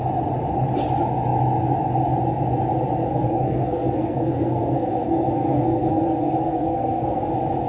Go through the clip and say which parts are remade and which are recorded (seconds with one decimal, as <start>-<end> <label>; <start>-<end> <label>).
0.0-3.0 recorded; 3.0-7.3 remade; 7.3-7.7 recorded